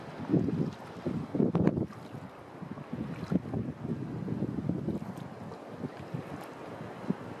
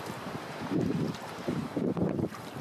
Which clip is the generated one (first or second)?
second